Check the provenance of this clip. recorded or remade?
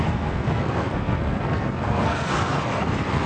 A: remade